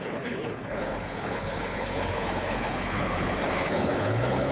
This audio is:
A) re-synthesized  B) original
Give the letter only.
A